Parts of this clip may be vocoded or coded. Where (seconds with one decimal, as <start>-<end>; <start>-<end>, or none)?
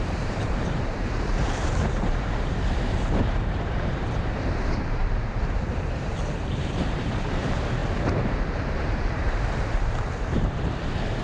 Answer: 0.0-11.2